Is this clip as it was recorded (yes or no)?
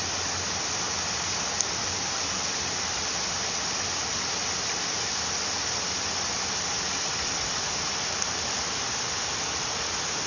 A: yes